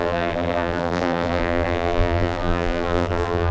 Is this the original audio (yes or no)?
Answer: no